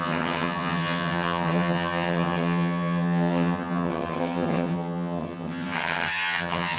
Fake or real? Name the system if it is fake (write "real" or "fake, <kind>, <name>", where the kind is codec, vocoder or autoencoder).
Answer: fake, vocoder, HiFi-GAN